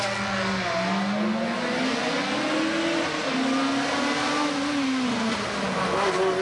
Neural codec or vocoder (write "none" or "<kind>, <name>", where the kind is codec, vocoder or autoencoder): none